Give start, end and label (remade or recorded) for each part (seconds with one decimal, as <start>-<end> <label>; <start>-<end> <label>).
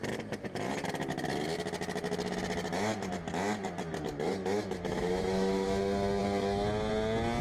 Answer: 0.0-4.4 recorded; 4.4-5.8 remade; 5.8-7.4 recorded